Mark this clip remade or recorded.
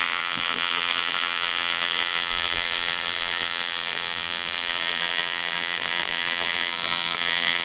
remade